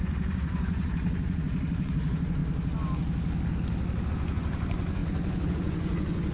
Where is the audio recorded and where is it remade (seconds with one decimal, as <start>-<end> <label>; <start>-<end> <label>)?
0.0-2.4 remade; 2.4-4.1 recorded; 4.1-6.3 remade

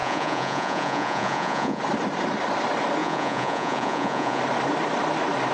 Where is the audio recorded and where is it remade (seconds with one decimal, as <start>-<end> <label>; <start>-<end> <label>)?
0.0-1.8 remade; 1.8-3.0 recorded; 3.0-4.4 remade; 4.4-5.5 recorded

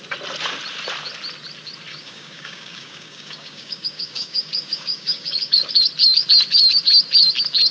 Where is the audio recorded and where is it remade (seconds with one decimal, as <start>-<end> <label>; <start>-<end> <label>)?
0.0-1.9 recorded; 1.9-5.7 remade; 5.7-7.7 recorded